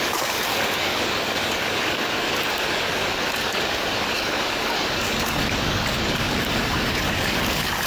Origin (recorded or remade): remade